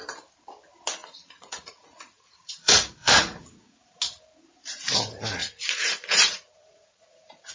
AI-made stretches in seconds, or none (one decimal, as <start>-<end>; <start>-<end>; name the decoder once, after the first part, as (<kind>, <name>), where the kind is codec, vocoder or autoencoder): 1.0-4.0 (vocoder, Vocos); 5.4-7.5